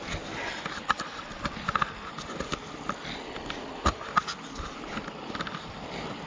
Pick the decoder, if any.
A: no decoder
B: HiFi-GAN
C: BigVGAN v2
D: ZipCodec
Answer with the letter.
A